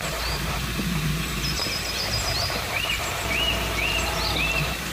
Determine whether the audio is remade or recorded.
remade